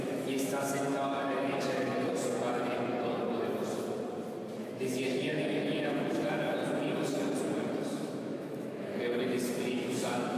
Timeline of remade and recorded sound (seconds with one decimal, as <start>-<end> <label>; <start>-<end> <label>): 0.0-1.9 remade; 1.9-4.6 recorded; 4.6-6.6 remade; 6.6-7.8 recorded; 7.8-8.9 remade; 8.9-9.7 recorded; 9.7-10.4 remade